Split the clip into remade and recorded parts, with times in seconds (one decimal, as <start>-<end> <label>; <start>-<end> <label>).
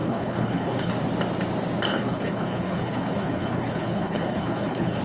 0.0-0.9 remade; 0.9-1.9 recorded; 1.9-5.0 remade